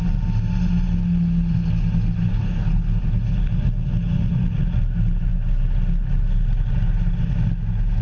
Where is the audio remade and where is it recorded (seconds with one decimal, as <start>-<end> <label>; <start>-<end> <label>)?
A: 0.0-2.3 recorded; 2.3-3.0 remade; 3.0-8.0 recorded